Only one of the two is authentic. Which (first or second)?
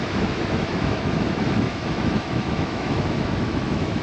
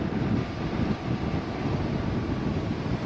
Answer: second